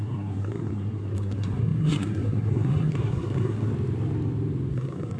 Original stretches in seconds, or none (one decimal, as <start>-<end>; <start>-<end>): 3.7-4.7